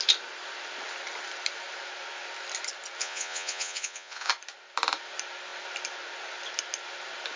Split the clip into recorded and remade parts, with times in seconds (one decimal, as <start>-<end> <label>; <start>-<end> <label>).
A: 0.0-3.0 recorded; 3.0-4.3 remade; 4.3-7.4 recorded